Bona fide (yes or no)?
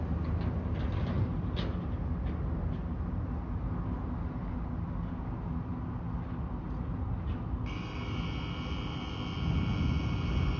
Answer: yes